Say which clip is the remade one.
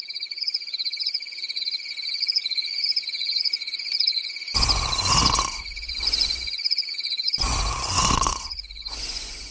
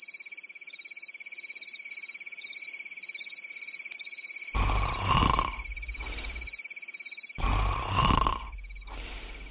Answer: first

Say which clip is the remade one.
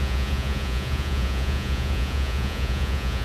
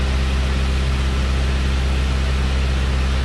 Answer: first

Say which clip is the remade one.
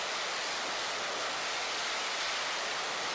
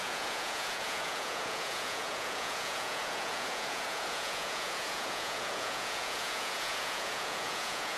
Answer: second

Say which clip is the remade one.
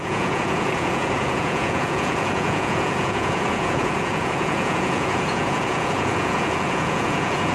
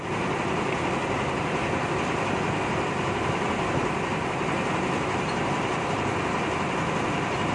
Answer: first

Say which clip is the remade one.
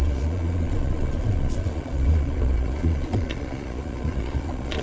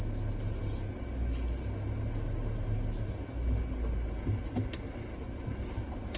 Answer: first